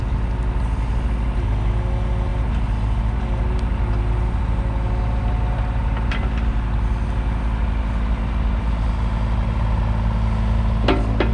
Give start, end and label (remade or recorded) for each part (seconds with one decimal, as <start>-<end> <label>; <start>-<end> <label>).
0.0-11.3 recorded